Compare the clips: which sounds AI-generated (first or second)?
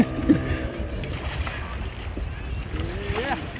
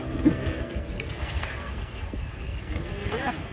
second